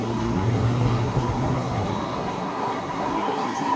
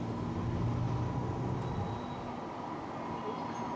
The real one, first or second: second